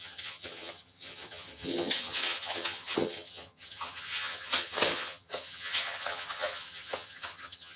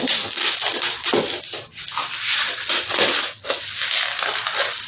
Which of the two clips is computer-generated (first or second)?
first